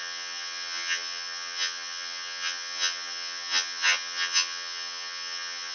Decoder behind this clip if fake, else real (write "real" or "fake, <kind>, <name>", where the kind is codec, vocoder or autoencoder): fake, vocoder, HiFi-GAN